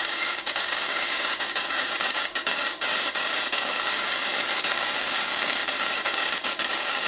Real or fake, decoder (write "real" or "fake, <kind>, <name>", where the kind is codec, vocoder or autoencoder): fake, codec, DAC